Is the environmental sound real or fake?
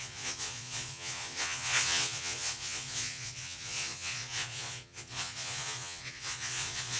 fake